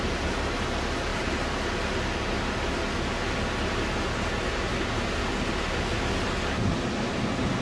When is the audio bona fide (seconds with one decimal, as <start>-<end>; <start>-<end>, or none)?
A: 0.0-7.6